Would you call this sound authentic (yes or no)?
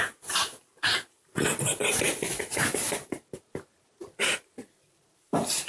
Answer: no